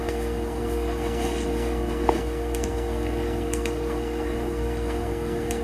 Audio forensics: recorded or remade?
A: remade